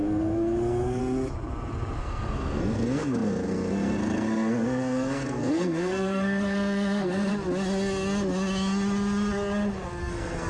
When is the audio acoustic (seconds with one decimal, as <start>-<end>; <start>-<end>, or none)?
1.0-2.0; 7.3-10.0